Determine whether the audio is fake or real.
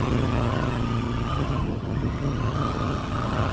fake